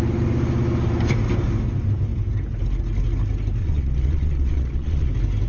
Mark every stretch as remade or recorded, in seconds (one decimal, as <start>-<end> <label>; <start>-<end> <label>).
0.0-3.6 recorded; 3.6-5.1 remade; 5.1-5.5 recorded